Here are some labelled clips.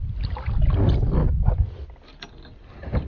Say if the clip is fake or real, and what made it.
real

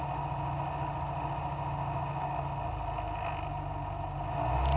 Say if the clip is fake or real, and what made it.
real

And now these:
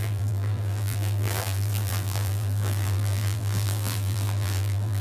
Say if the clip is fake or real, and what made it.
fake, vocoder, BigVGAN v2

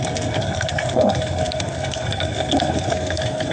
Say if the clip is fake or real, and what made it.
fake, codec, SNAC